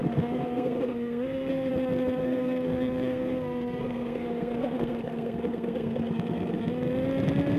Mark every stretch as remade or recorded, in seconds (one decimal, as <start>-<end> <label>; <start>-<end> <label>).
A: 0.0-1.7 remade; 1.7-2.2 recorded; 2.2-6.6 remade; 6.6-7.6 recorded